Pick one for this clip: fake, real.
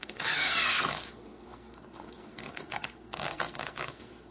fake